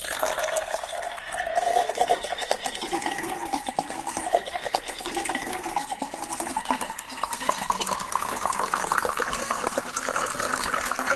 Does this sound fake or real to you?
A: fake